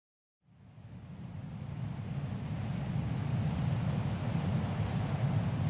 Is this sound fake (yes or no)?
no